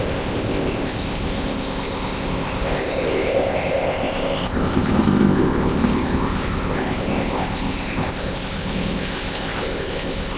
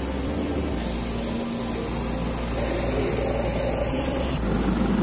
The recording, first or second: second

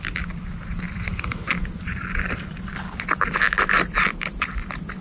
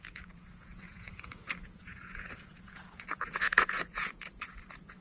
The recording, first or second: first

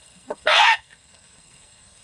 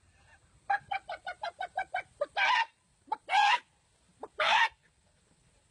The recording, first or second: second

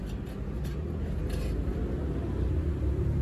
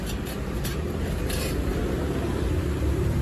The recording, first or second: first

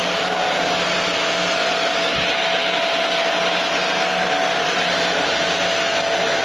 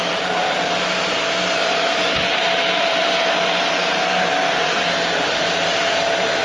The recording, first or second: first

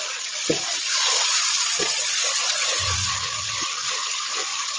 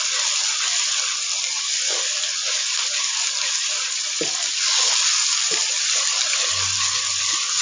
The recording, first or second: second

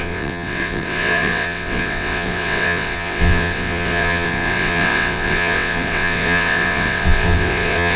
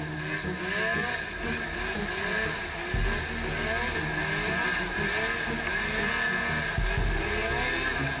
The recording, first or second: second